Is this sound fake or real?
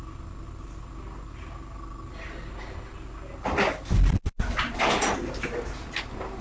real